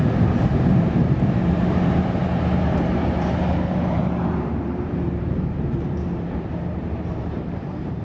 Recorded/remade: remade